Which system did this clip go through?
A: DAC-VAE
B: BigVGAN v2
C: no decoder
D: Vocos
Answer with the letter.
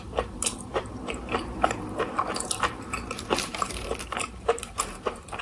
B